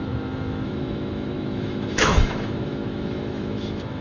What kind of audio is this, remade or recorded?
remade